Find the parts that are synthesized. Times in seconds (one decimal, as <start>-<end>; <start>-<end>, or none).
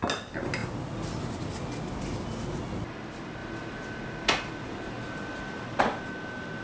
none